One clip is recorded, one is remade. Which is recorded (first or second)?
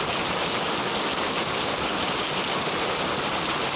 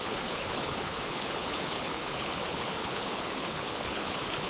first